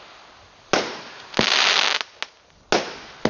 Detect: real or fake real